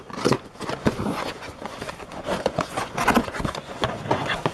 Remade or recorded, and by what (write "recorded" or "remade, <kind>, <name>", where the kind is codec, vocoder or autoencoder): remade, vocoder, Vocos